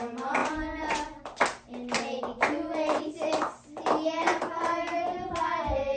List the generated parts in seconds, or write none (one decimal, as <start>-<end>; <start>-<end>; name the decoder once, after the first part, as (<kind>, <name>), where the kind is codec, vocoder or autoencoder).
none